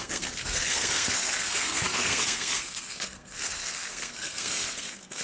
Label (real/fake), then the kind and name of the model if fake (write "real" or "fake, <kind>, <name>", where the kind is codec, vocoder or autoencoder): fake, codec, SNAC